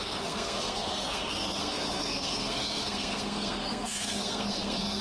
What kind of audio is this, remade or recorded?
remade